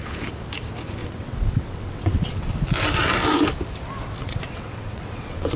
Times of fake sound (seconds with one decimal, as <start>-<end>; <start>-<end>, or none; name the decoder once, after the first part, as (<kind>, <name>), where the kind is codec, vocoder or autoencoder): 1.0-2.5 (vocoder, WaveNeXt); 4.2-5.6